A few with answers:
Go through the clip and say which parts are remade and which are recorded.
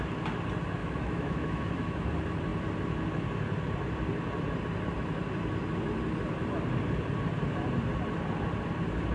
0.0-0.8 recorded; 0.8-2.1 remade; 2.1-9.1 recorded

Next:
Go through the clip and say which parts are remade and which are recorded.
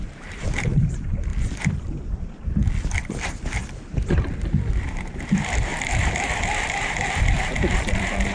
0.0-1.3 remade; 1.3-4.7 recorded; 4.7-8.3 remade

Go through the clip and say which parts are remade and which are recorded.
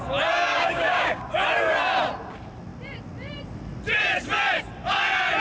0.0-0.5 recorded; 0.5-1.2 remade; 1.2-5.4 recorded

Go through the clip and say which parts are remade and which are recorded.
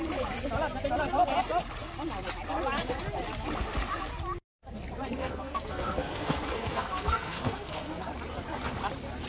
0.0-5.2 recorded; 5.2-8.1 remade; 8.1-9.3 recorded